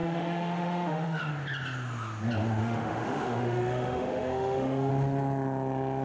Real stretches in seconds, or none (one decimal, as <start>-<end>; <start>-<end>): 1.3-2.6; 4.9-6.0